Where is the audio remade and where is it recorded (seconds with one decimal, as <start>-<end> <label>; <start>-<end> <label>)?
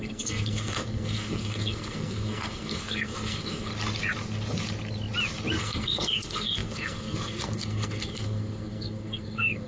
0.0-3.7 remade; 3.7-5.6 recorded; 5.6-9.7 remade